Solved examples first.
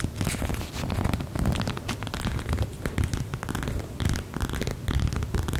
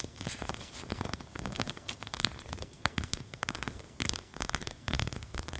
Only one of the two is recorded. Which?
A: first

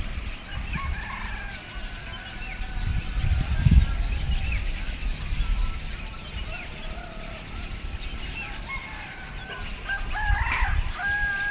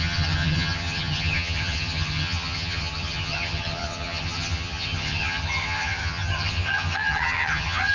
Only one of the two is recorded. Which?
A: first